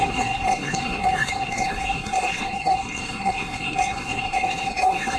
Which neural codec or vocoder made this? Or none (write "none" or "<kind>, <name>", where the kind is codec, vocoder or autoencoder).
codec, SNAC